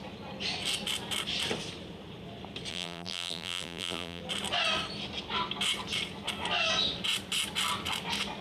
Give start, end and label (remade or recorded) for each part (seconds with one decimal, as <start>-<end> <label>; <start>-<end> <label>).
0.0-2.7 recorded; 2.7-4.2 remade; 4.2-8.4 recorded